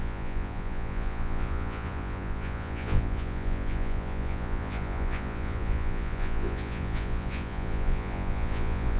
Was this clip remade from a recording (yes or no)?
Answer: yes